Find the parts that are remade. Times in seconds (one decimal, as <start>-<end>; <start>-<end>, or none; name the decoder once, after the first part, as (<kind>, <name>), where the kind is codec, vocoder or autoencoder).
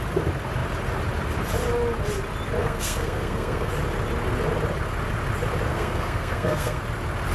2.6-3.7 (codec, SNAC); 5.7-6.8